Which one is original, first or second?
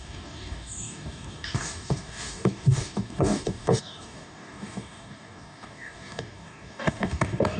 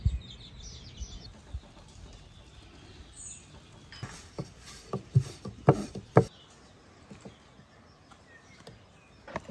second